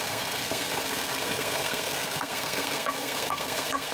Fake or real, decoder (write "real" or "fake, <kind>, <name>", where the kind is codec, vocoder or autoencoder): fake, codec, SNAC